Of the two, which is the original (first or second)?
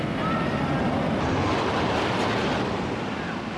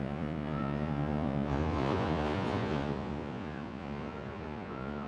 first